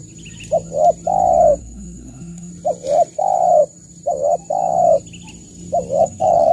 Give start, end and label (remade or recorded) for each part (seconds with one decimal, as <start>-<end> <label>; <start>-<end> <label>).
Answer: 0.0-1.6 recorded; 1.6-2.5 remade; 2.5-6.0 recorded; 6.0-6.5 remade